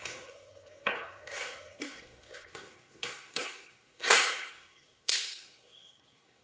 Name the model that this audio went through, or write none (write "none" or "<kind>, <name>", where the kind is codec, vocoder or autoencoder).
codec, SNAC